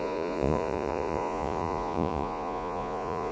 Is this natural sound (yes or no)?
no